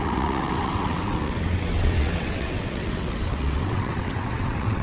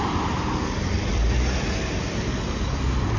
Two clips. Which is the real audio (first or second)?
second